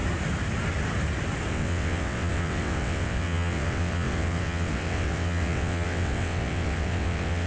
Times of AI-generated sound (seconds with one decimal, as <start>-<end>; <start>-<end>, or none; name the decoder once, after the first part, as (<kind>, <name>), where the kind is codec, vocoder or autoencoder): 1.5-7.5 (vocoder, WaveNeXt)